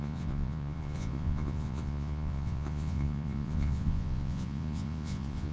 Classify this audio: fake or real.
fake